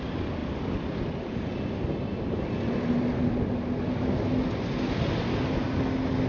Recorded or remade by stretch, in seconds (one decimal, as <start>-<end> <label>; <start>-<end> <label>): 0.0-6.3 recorded